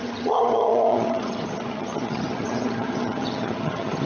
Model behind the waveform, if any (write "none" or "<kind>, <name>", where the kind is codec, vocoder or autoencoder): vocoder, HiFi-GAN